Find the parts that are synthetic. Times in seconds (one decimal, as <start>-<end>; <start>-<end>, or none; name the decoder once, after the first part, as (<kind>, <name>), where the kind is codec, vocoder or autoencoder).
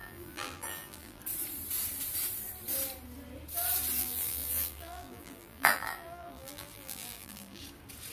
0.0-1.2 (vocoder, BigVGAN v2); 4.0-7.6